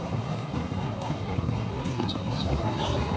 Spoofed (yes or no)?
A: yes